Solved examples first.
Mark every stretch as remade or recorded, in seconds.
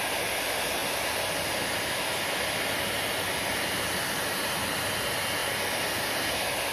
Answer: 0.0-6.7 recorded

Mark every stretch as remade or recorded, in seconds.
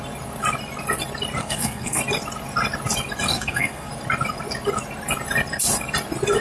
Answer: 0.0-1.4 recorded; 1.4-2.0 remade; 2.0-3.3 recorded; 3.3-3.9 remade; 3.9-6.4 recorded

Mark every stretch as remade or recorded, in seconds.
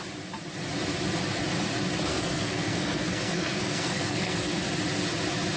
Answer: 0.0-2.1 recorded; 2.1-4.6 remade; 4.6-5.6 recorded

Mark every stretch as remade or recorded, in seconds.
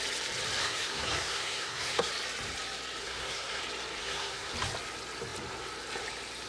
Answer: 0.0-0.6 recorded; 0.6-2.1 remade; 2.1-3.0 recorded; 3.0-3.6 remade; 3.6-4.0 recorded; 4.0-4.5 remade; 4.5-6.5 recorded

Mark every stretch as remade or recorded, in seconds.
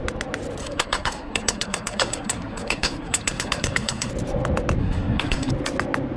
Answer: 0.0-0.6 recorded; 0.6-4.1 remade; 4.1-4.8 recorded; 4.8-5.5 remade; 5.5-6.2 recorded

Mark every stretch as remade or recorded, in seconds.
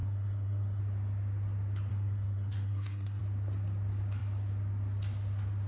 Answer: 0.0-0.8 remade; 0.8-1.9 recorded; 1.9-3.2 remade; 3.2-5.7 recorded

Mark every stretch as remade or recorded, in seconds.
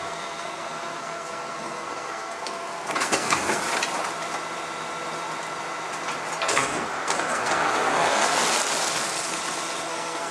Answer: 0.0-3.6 remade; 3.6-6.4 recorded; 6.4-8.4 remade; 8.4-9.9 recorded; 9.9-10.3 remade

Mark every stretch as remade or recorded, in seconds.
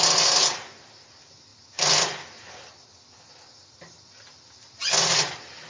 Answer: 0.0-5.7 recorded